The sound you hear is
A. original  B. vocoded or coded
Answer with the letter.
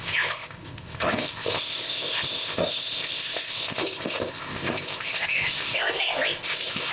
B